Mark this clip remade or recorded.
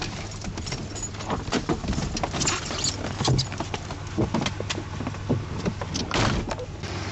recorded